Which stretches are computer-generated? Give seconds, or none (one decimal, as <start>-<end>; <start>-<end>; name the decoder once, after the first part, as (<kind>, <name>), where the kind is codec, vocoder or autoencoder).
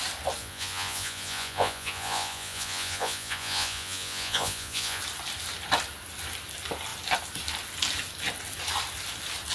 0.4-5.0 (vocoder, Vocos)